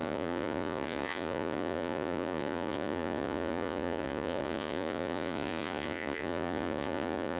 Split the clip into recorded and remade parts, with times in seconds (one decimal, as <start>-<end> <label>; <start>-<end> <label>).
0.0-7.4 remade